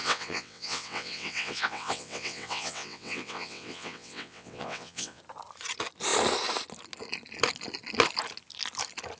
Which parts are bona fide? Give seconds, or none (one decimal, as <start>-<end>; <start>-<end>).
5.2-9.2